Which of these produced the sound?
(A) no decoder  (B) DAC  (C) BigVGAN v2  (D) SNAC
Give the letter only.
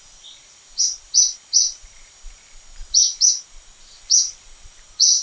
C